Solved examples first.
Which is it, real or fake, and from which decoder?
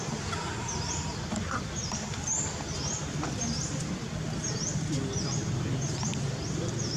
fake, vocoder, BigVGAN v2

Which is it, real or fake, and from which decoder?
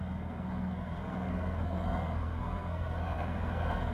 fake, codec, SNAC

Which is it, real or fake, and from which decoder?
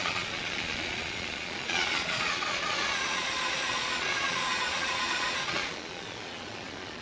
fake, vocoder, Vocos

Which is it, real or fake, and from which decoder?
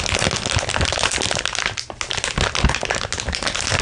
real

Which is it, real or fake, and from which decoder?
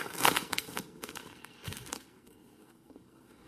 fake, codec, SNAC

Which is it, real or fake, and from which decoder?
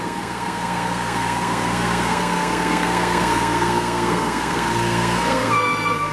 fake, codec, SNAC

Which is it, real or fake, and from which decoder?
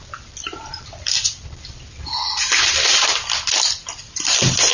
fake, vocoder, BigVGAN v2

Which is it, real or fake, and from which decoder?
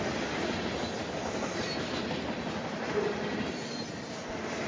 real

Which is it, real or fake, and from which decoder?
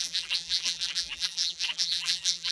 fake, vocoder, BigVGAN v2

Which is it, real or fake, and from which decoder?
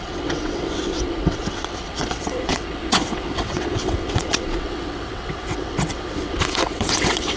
fake, vocoder, WaveNeXt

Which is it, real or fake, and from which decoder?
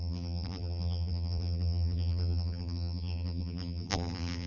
fake, vocoder, BigVGAN v2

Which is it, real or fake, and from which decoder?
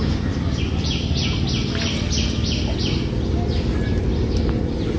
real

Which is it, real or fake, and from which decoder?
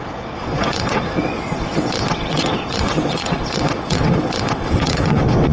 fake, vocoder, WaveNeXt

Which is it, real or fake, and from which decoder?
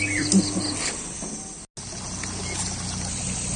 real